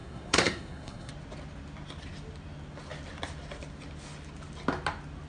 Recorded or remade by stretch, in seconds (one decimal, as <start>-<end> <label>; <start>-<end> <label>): 0.0-1.1 remade; 1.1-5.3 recorded